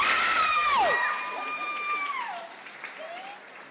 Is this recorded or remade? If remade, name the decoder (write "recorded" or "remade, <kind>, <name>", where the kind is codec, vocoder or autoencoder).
remade, vocoder, BigVGAN v2